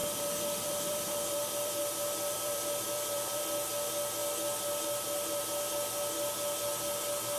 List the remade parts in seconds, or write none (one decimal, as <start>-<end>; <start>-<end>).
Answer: 0.0-3.4